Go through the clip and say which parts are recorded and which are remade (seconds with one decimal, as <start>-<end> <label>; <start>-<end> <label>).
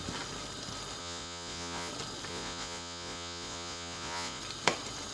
0.0-1.0 recorded; 1.0-1.9 remade; 1.9-2.3 recorded; 2.3-4.4 remade; 4.4-5.1 recorded